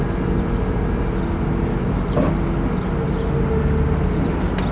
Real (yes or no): yes